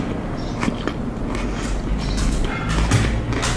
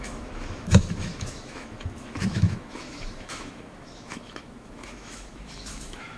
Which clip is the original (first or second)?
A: first